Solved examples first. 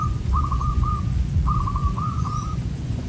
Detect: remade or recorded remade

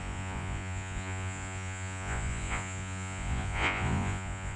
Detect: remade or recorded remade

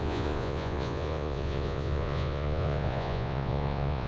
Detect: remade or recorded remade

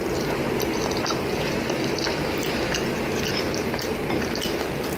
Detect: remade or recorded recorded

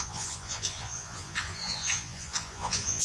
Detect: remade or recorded remade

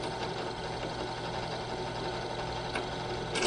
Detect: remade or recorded recorded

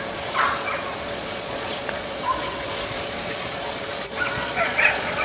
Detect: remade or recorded remade